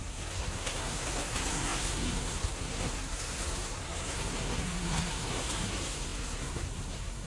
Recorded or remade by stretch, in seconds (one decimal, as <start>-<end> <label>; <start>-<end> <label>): 0.0-7.3 remade